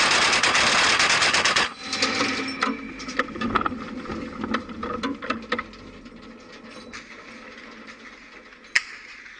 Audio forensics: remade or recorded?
recorded